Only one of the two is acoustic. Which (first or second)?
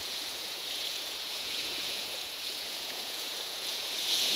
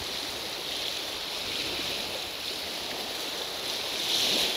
second